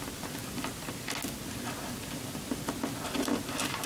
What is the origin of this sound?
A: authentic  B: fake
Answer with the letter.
A